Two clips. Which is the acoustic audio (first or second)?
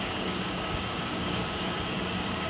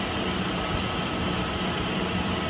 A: second